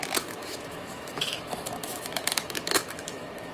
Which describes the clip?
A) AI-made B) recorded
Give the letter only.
A